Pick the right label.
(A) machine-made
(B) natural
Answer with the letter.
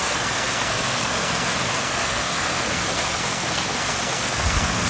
A